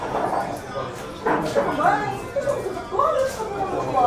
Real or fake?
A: fake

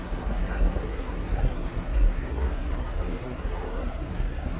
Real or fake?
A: fake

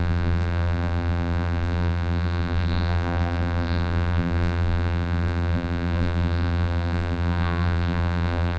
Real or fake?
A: fake